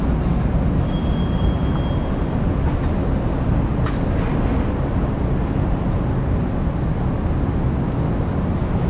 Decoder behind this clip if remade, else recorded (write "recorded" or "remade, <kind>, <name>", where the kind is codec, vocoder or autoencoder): recorded